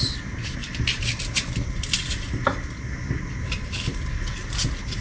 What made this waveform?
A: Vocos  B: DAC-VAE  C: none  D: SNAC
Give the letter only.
C